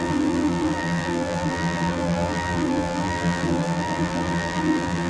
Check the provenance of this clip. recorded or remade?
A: remade